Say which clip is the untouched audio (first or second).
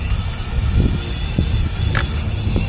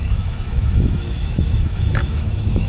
first